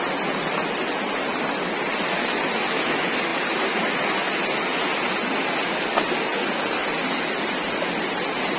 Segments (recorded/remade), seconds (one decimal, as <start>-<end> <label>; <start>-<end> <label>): 0.0-8.6 recorded